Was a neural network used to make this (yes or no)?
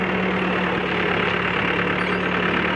no